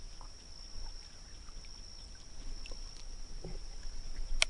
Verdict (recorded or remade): recorded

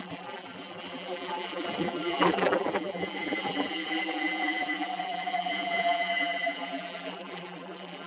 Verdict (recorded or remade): remade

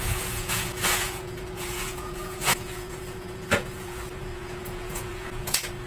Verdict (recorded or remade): remade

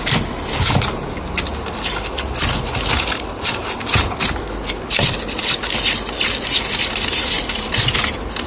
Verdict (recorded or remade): recorded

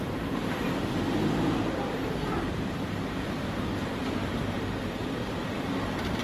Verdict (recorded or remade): remade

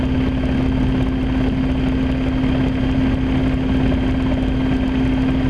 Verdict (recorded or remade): recorded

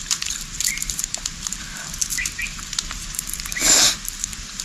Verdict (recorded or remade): remade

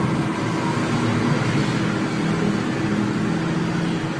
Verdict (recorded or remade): recorded